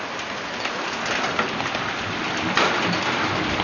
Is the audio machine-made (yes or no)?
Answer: no